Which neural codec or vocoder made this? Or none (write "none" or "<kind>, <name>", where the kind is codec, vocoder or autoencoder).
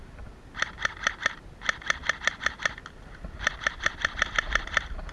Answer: none